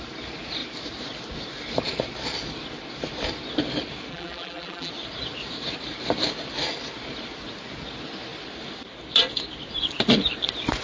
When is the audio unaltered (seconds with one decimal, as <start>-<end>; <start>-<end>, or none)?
0.0-4.1; 4.9-10.8

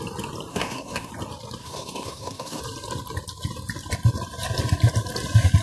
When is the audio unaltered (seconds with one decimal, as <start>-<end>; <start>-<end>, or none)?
0.0-0.5; 1.1-1.6; 2.6-5.6